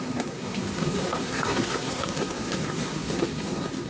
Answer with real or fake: fake